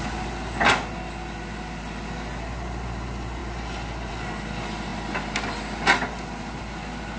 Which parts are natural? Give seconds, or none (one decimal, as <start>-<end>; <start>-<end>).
0.0-7.2